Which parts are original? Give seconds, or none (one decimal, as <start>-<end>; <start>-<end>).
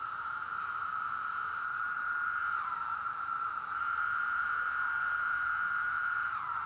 0.0-6.7